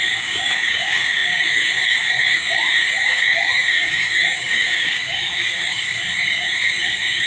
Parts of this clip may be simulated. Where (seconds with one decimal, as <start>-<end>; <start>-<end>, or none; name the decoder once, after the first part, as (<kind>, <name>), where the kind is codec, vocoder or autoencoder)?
0.0-7.3 (codec, DAC)